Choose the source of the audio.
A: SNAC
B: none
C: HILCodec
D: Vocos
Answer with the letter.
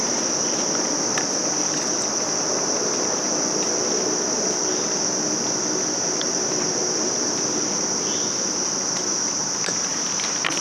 B